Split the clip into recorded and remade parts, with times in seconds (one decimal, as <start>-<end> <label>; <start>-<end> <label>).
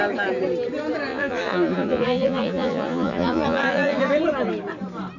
0.0-1.1 recorded; 1.1-4.0 remade; 4.0-5.2 recorded